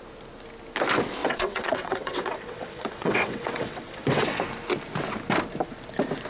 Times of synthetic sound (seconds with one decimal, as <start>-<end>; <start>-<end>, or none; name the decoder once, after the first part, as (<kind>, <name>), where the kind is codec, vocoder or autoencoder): 1.2-4.4 (vocoder, WaveNeXt)